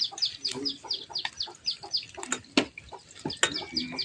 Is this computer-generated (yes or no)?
no